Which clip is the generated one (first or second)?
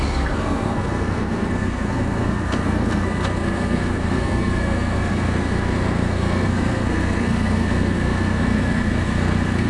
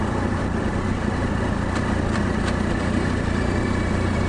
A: first